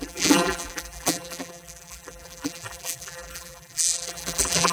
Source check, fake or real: fake